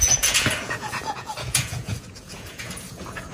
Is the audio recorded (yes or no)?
no